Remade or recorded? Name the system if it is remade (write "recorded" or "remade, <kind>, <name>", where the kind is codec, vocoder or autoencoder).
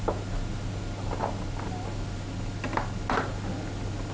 recorded